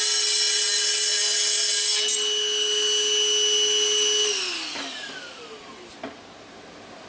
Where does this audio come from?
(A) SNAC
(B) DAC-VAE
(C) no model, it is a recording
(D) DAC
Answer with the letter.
C